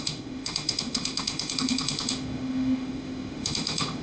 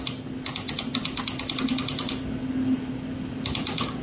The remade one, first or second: first